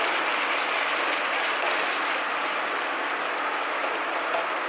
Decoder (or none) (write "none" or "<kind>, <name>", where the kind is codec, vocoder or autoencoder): none